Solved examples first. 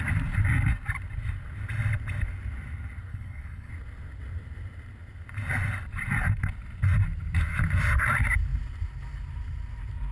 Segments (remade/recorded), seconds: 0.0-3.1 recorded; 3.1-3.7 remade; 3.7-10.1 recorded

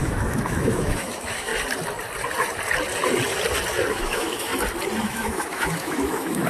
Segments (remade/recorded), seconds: 0.0-1.5 remade; 1.5-3.9 recorded; 3.9-4.5 remade; 4.5-5.0 recorded; 5.0-6.5 remade